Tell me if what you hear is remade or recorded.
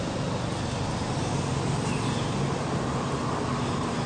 recorded